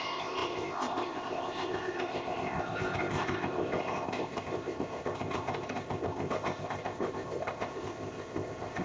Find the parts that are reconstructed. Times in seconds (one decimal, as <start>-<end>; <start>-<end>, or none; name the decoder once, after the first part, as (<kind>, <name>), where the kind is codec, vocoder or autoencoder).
0.0-8.8 (codec, ZipCodec)